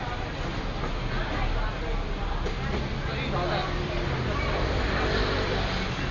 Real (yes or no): yes